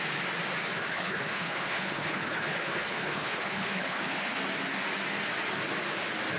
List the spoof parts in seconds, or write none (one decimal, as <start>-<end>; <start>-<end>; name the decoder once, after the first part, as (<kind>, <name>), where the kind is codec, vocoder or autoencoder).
0.9-4.4 (codec, HILCodec)